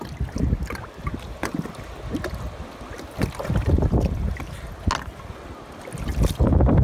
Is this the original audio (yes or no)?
yes